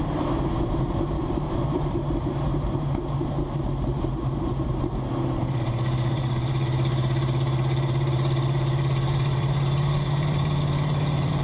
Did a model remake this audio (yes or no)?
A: yes